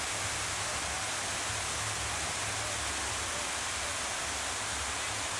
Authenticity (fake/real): real